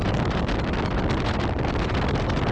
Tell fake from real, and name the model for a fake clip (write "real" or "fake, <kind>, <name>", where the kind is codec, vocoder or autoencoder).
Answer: real